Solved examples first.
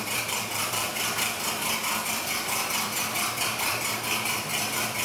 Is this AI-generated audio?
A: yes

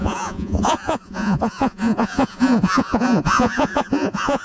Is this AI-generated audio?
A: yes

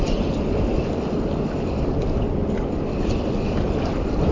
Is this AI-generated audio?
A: no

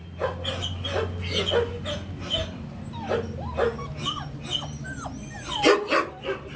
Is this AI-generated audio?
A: no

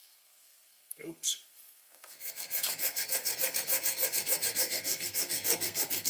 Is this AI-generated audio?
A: yes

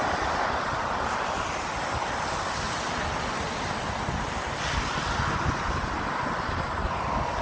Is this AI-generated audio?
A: no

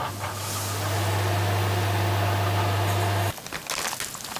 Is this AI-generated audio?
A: no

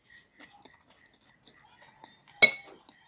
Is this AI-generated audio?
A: no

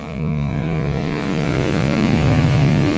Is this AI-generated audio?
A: yes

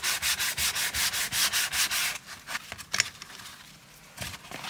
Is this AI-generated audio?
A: no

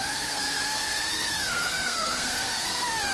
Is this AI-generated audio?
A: yes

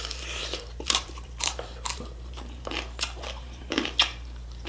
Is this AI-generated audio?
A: yes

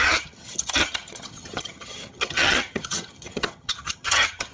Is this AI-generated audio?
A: yes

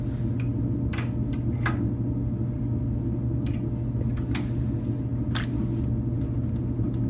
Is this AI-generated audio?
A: no